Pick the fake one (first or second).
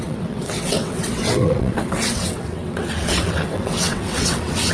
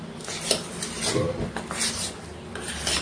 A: first